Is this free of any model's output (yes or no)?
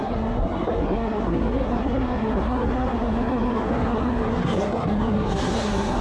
no